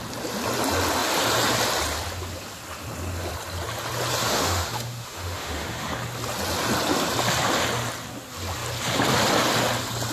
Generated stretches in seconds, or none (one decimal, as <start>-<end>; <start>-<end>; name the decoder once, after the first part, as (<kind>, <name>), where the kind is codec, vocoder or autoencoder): 4.2-5.9 (autoencoder, DAC-VAE)